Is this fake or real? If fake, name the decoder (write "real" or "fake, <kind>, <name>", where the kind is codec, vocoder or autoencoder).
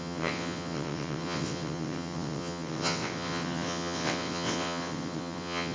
fake, vocoder, WaveNeXt